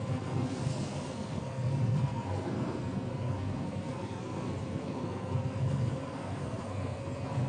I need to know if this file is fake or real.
fake